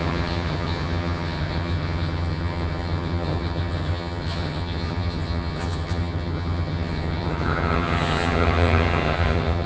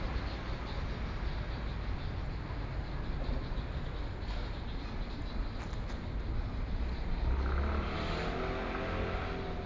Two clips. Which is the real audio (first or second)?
second